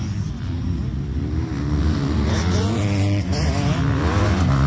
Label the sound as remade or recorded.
recorded